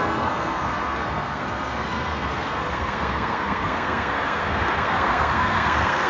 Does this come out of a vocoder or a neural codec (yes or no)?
yes